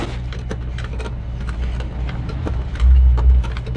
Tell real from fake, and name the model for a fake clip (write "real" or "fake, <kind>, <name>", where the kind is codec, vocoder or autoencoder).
real